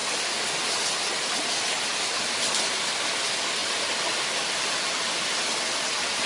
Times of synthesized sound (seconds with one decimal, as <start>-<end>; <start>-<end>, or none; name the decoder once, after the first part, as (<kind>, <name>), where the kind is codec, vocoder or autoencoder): none